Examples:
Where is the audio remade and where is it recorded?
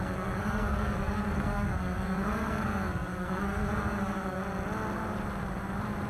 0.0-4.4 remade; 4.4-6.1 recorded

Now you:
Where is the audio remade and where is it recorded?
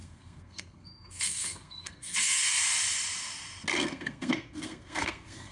0.0-2.6 remade; 2.6-3.7 recorded; 3.7-5.5 remade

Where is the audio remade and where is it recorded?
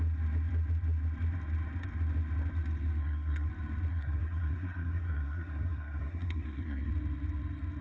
0.0-3.0 recorded; 3.0-3.5 remade; 3.5-3.9 recorded; 3.9-6.9 remade; 6.9-7.8 recorded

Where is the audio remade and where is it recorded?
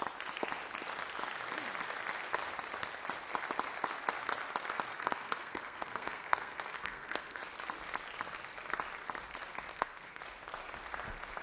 0.0-4.9 recorded; 4.9-7.4 remade; 7.4-9.7 recorded; 9.7-10.2 remade; 10.2-11.4 recorded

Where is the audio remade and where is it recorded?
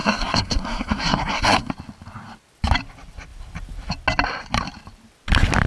0.0-1.7 remade; 1.7-5.7 recorded